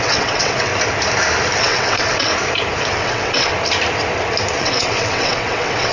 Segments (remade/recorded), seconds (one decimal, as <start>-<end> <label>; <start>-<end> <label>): 0.0-0.7 remade; 0.7-1.6 recorded; 1.6-2.3 remade; 2.3-2.9 recorded; 2.9-3.5 remade; 3.5-4.6 recorded; 4.6-5.9 remade